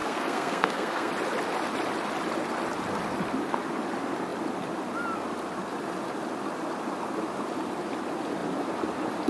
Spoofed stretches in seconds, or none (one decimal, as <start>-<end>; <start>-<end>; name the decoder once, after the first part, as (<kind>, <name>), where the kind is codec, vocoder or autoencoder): 0.0-1.1 (codec, SNAC)